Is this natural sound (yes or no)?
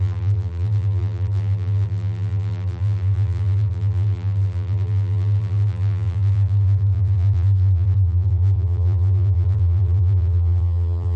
no